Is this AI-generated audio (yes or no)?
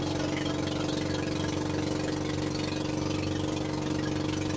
no